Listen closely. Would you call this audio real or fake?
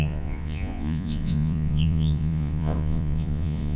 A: fake